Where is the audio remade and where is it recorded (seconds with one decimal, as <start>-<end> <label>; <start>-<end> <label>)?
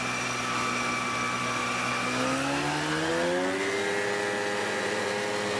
0.0-4.6 recorded; 4.6-5.1 remade; 5.1-5.6 recorded